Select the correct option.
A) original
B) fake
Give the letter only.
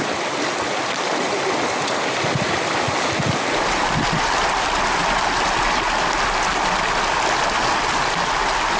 A